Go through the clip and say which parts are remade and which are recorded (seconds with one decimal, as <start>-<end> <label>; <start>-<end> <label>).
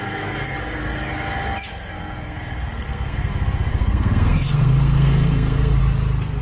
0.0-1.7 recorded; 1.7-3.3 remade; 3.3-3.7 recorded; 3.7-5.8 remade; 5.8-6.4 recorded